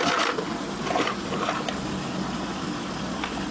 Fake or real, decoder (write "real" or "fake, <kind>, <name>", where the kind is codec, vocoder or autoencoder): real